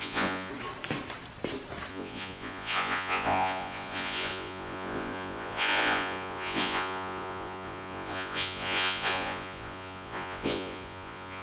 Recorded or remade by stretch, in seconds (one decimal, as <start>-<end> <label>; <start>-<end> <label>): 0.0-0.5 remade; 0.5-1.9 recorded; 1.9-11.4 remade